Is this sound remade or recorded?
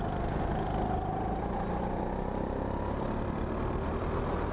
recorded